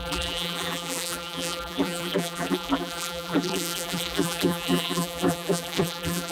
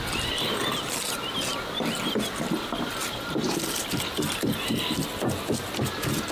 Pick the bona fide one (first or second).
second